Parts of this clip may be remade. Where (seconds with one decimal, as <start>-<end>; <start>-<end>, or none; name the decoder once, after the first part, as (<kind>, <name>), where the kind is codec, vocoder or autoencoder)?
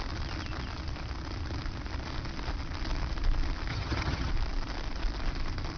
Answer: 3.7-4.3 (vocoder, HiFi-GAN)